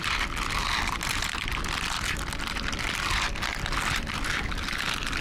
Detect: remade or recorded recorded